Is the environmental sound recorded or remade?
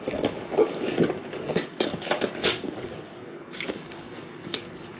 remade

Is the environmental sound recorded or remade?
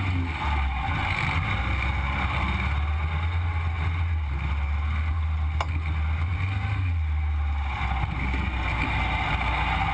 recorded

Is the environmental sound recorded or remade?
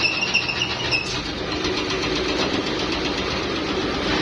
recorded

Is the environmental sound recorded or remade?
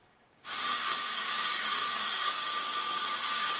remade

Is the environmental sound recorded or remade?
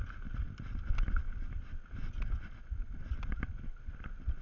recorded